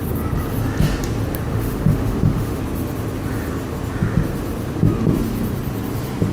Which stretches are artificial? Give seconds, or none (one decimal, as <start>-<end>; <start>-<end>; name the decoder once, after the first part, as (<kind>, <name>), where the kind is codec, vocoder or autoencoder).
1.5-2.6 (autoencoder, DAC-VAE)